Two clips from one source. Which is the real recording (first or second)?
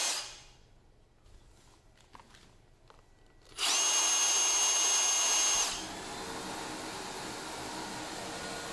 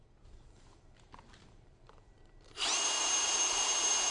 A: first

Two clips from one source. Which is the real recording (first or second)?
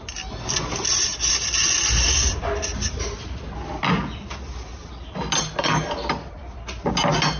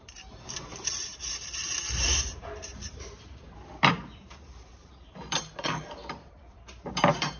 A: first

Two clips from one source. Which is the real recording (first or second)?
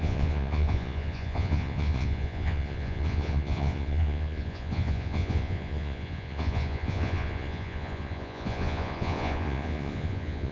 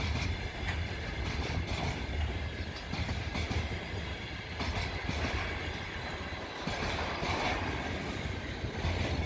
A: second